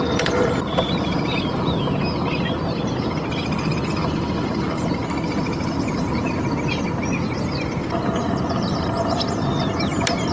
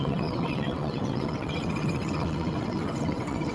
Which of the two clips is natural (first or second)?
first